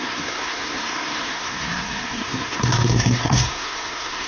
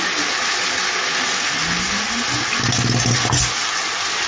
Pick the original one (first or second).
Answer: second